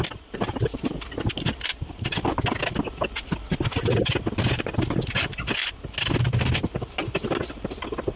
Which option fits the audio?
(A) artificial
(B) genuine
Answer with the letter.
B